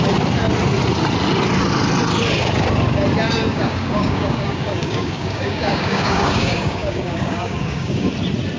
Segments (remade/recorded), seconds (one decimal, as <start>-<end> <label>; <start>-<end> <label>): 0.0-3.5 recorded; 3.5-8.1 remade; 8.1-8.6 recorded